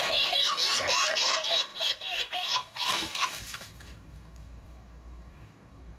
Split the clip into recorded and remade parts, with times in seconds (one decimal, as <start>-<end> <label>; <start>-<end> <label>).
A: 0.0-6.0 remade